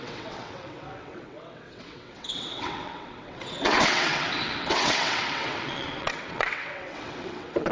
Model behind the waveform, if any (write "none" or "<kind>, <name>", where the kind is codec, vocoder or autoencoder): vocoder, WaveNeXt